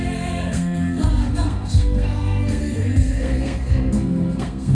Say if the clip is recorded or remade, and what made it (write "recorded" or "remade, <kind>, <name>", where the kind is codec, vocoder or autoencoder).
remade, codec, SNAC